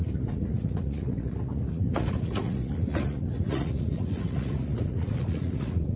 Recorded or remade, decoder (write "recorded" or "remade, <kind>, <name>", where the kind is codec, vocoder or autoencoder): remade, vocoder, Vocos